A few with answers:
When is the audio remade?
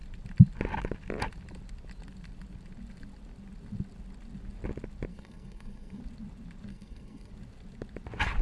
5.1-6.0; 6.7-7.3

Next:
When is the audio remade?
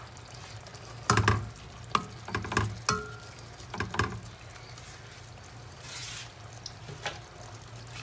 none